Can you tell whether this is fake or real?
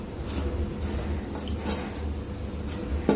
real